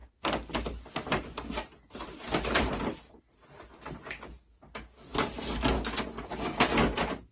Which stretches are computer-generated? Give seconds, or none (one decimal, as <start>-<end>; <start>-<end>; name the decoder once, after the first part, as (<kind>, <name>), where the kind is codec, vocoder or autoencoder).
none